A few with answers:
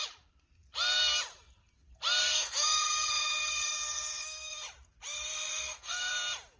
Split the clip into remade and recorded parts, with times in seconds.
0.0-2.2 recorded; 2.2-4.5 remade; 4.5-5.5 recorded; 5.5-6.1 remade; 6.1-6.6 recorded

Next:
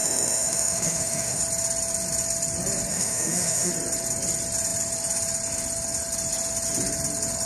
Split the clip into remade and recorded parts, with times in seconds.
0.0-1.4 remade; 1.4-2.9 recorded; 2.9-3.7 remade; 3.7-7.5 recorded